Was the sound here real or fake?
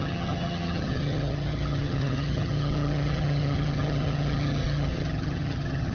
fake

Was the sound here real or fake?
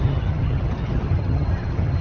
fake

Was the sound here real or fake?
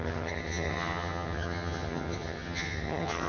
fake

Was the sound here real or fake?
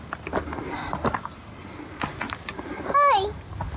real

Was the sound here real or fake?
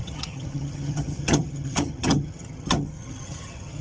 fake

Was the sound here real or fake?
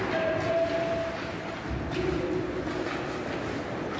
real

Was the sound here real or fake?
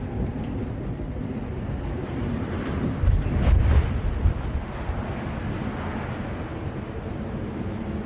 real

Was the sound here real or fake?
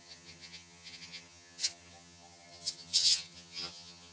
fake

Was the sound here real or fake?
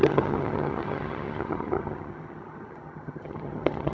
fake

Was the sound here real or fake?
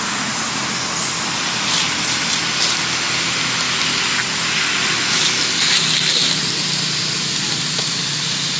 real